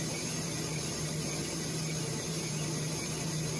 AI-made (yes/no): yes